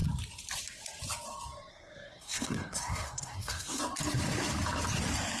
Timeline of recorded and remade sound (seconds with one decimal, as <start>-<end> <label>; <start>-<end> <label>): 0.0-1.7 recorded; 1.7-3.8 remade; 3.8-5.4 recorded